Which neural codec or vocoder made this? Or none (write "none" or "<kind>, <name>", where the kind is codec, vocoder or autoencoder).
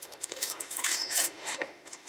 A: autoencoder, DAC-VAE